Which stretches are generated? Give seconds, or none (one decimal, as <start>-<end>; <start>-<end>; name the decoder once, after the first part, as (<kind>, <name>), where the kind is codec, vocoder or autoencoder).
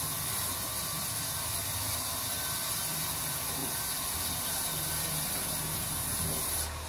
3.6-4.2 (vocoder, BigVGAN v2)